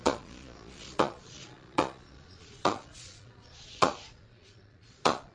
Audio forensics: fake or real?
fake